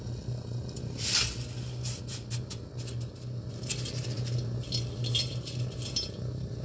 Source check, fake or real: real